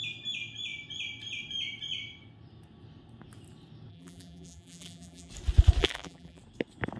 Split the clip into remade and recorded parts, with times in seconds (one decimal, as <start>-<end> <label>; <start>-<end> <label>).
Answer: 0.0-3.9 recorded; 3.9-5.3 remade; 5.3-5.8 recorded; 5.8-6.4 remade; 6.4-7.0 recorded